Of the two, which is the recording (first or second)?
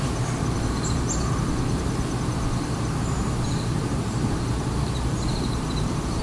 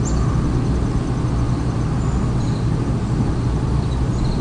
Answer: second